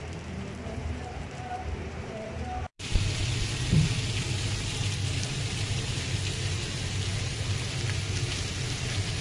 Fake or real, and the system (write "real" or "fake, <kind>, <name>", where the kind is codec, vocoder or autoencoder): fake, vocoder, BigVGAN v2